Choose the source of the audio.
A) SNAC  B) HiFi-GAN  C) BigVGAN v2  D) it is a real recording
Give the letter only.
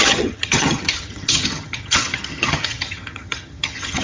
B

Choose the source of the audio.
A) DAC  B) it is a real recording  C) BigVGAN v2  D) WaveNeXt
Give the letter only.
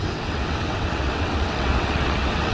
D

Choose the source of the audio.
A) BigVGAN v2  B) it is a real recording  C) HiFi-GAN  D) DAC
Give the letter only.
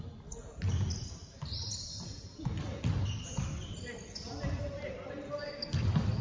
B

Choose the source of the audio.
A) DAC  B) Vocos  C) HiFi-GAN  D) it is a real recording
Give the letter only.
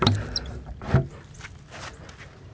D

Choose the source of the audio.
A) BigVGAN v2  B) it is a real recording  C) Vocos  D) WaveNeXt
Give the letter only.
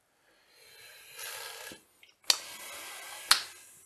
B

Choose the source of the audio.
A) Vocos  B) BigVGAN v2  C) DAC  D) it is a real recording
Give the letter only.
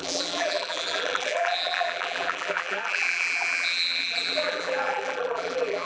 B